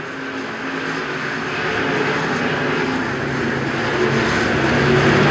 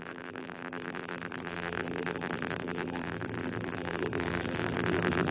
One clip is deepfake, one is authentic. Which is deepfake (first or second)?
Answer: second